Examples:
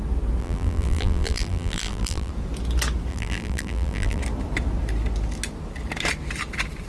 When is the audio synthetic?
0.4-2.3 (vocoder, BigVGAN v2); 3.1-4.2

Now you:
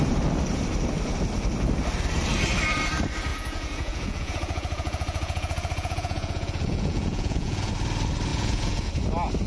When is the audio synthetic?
3.3-7.7 (vocoder, Vocos); 8.3-8.9

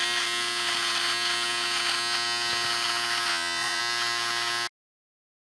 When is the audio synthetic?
3.3-3.8 (vocoder, Vocos)

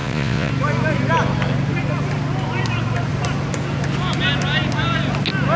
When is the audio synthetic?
0.0-0.5 (vocoder, Vocos)

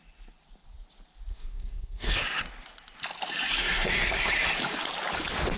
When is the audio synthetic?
1.3-2.1 (codec, SNAC); 3.6-4.3

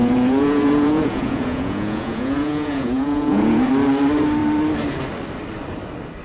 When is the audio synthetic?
0.0-3.7 (vocoder, Vocos)

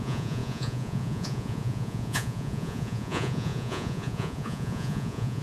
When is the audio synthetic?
0.0-5.4 (vocoder, Vocos)